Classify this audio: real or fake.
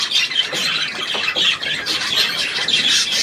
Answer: real